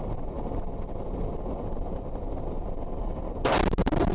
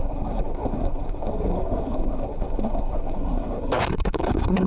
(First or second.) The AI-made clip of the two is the second